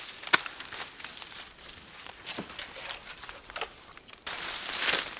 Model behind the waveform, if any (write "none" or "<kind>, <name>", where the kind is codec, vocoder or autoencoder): none